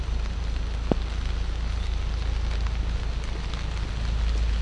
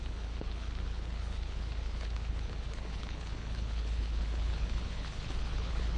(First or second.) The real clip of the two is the first